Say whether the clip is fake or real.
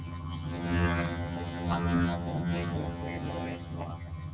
fake